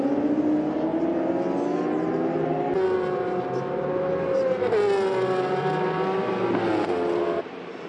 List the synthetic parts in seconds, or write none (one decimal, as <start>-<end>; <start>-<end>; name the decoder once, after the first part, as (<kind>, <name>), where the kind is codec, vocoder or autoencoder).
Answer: none